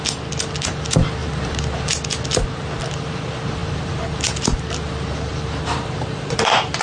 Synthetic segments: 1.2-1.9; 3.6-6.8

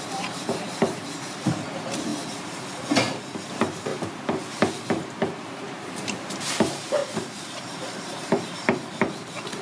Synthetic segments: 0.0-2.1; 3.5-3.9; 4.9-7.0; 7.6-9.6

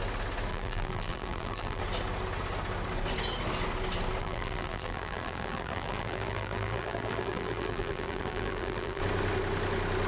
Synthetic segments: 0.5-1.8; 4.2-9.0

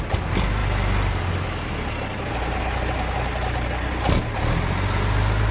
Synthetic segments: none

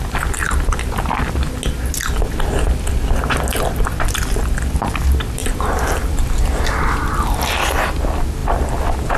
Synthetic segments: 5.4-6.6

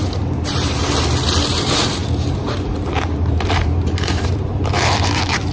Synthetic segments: 0.0-0.8; 1.5-5.5

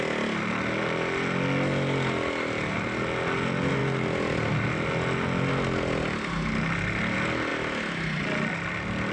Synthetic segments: none